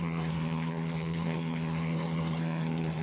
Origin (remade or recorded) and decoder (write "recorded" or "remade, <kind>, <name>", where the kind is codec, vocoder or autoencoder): remade, codec, SNAC